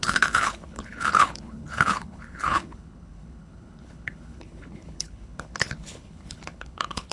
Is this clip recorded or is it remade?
remade